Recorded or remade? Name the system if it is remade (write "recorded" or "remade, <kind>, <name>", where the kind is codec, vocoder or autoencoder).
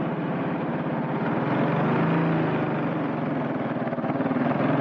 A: recorded